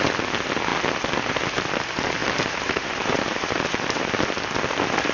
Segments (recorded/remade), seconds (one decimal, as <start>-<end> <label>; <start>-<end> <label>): 0.0-2.2 recorded; 2.2-4.1 remade; 4.1-5.1 recorded